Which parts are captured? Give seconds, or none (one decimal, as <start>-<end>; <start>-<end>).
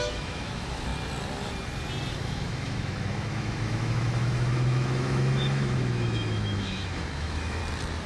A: 0.9-2.1; 7.6-8.1